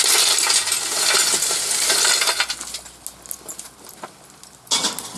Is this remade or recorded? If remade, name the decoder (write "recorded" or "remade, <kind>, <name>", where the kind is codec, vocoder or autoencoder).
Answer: recorded